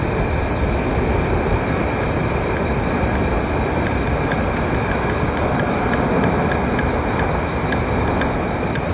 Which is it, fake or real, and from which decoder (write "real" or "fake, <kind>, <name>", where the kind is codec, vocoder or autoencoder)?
real